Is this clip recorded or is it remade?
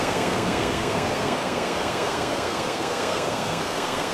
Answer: remade